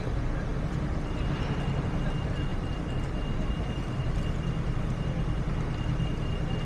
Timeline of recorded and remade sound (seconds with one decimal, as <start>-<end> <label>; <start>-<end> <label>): 0.0-6.7 recorded